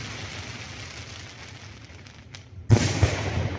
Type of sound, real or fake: real